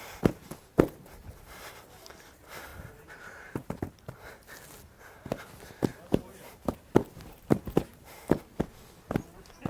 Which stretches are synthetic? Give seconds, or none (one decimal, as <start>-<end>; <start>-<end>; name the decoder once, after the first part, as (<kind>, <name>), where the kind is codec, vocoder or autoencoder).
2.7-3.9 (vocoder, BigVGAN v2); 5.9-8.2